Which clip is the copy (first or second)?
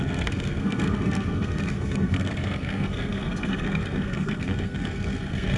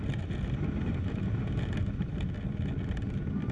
first